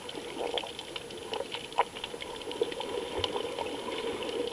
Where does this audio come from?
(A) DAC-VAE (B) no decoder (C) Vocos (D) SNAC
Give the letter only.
B